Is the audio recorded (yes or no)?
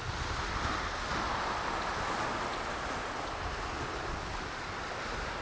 yes